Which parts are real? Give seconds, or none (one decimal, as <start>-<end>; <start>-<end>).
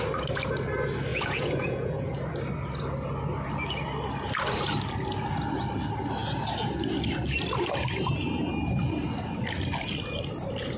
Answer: 0.0-1.1; 2.1-10.8